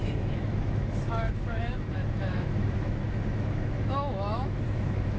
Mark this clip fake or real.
fake